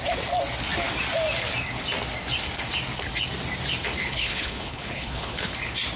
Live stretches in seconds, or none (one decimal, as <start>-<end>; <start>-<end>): 0.0-4.0; 5.5-6.0